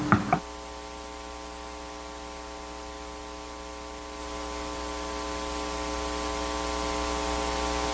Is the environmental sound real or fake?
real